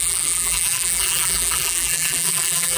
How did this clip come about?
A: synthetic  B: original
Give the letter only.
A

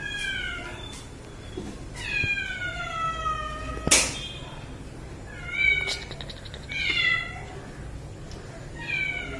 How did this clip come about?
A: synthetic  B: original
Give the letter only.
B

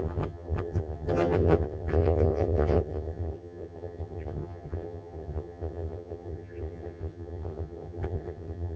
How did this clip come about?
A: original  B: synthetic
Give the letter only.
B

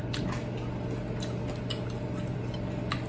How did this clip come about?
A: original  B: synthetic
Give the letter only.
A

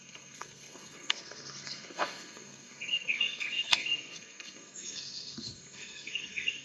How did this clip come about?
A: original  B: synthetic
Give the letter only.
B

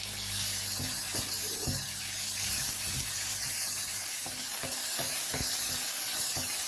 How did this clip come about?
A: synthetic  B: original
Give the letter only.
A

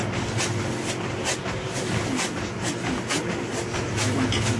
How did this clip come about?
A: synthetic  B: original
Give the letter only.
B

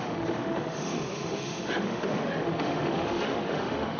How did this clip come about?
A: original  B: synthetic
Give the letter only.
B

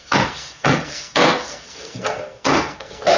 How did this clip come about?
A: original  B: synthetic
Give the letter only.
B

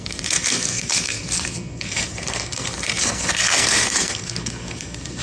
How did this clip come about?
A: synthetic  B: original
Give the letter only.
A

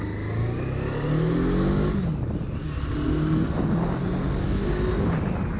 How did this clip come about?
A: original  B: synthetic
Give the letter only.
A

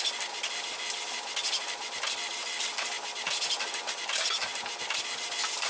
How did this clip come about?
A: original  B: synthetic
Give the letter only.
A